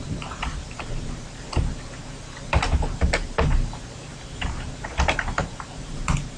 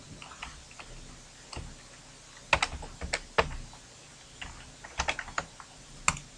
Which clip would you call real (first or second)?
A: second